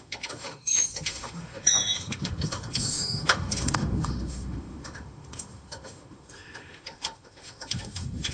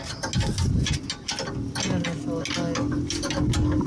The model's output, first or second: first